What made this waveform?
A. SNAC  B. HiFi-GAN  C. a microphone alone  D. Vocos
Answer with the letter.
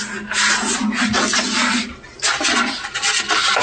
C